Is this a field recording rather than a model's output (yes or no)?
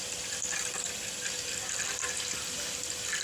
yes